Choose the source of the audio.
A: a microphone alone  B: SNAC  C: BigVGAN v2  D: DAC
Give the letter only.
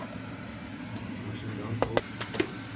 A